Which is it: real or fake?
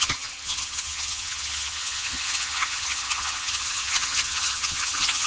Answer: fake